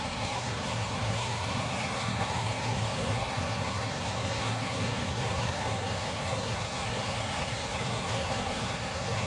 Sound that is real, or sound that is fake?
fake